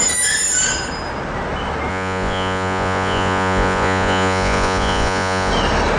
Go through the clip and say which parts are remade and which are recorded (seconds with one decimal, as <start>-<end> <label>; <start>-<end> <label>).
0.0-1.9 recorded; 1.9-5.5 remade; 5.5-6.0 recorded